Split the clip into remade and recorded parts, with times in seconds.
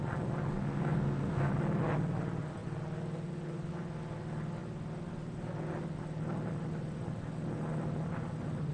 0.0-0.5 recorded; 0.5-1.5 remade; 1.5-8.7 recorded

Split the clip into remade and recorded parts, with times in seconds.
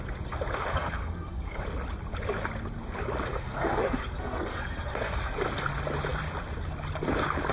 0.0-0.7 recorded; 0.7-1.6 remade; 1.6-3.3 recorded; 3.3-5.4 remade; 5.4-7.5 recorded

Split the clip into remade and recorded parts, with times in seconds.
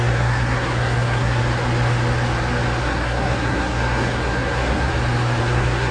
0.0-1.4 remade; 1.4-2.8 recorded; 2.8-4.9 remade; 4.9-5.4 recorded; 5.4-5.9 remade